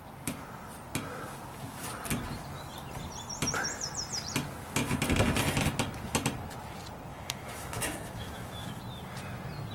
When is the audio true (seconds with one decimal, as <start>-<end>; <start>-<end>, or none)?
0.0-7.1; 8.8-9.7